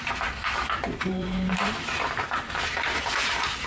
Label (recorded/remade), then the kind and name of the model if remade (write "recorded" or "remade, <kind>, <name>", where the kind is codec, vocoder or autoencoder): remade, vocoder, BigVGAN v2